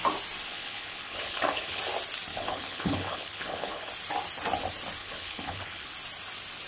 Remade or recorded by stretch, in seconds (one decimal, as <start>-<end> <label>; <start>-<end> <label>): 0.0-0.5 recorded; 0.5-1.8 remade; 1.8-2.3 recorded; 2.3-3.9 remade; 3.9-5.0 recorded; 5.0-5.9 remade; 5.9-6.7 recorded